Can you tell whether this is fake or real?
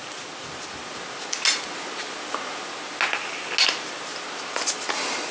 real